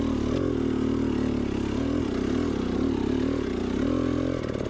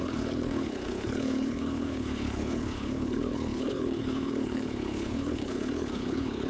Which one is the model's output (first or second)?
second